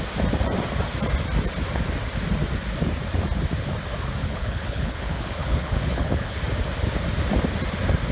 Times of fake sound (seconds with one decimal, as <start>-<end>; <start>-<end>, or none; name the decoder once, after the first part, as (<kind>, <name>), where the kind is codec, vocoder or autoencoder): 4.2-6.4 (codec, HILCodec)